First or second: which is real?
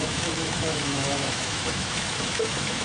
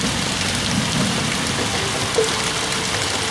second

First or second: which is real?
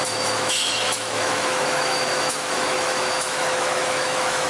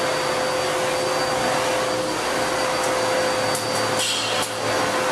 second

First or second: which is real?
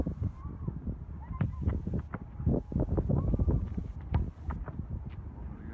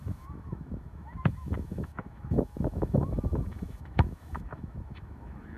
first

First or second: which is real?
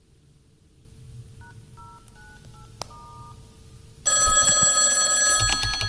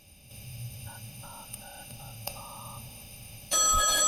first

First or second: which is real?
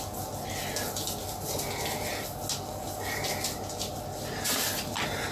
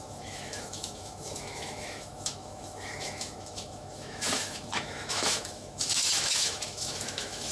first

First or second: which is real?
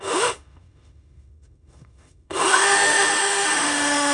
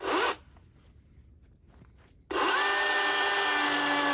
second